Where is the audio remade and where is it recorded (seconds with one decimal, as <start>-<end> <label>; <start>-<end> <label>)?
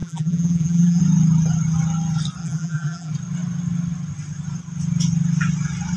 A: 0.0-1.0 remade; 1.0-2.4 recorded; 2.4-3.1 remade; 3.1-6.0 recorded